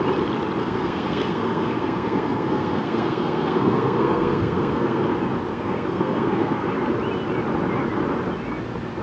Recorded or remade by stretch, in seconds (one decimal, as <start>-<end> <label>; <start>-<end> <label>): 0.0-0.6 recorded; 0.6-5.0 remade; 5.0-5.5 recorded; 5.5-6.7 remade; 6.7-9.0 recorded